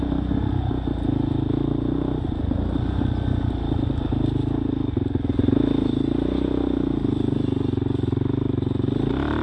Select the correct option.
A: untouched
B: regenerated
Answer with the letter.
A